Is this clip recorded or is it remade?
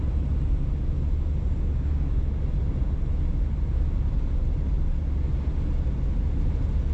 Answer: recorded